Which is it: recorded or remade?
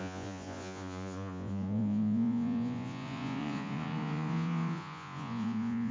remade